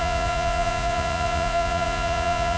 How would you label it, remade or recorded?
remade